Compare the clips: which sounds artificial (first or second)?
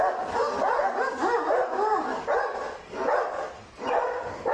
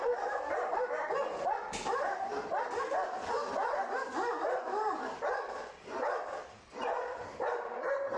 second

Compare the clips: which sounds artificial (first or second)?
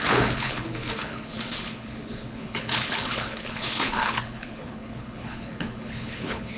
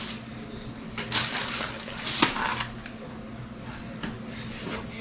first